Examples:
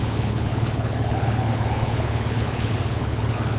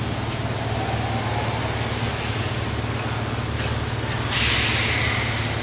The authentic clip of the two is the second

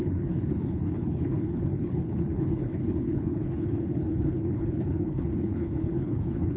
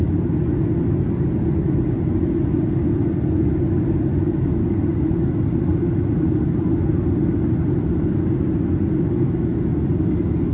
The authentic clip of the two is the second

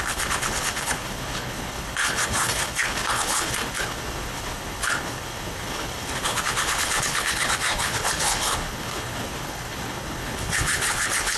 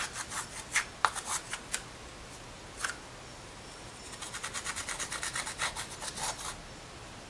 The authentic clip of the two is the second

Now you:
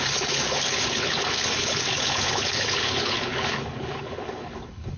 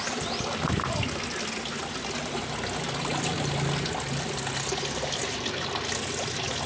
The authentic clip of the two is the second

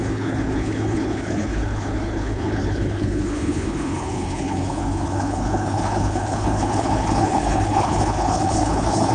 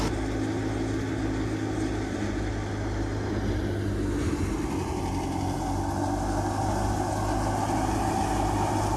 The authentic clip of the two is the second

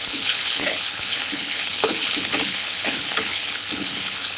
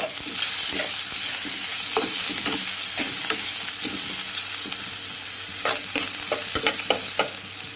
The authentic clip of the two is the second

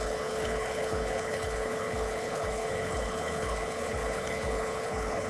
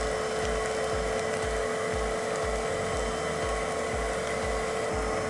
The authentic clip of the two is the second